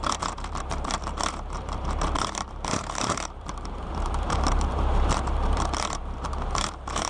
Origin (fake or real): fake